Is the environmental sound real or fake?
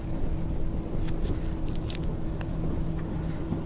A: real